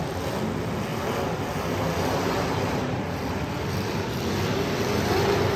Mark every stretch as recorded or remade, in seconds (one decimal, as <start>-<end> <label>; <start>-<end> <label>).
0.0-0.9 recorded; 0.9-4.3 remade; 4.3-5.6 recorded